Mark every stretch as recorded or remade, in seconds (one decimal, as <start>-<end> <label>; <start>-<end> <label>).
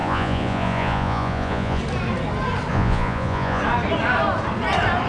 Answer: 0.0-1.8 remade; 1.8-2.7 recorded; 2.7-3.6 remade; 3.6-5.1 recorded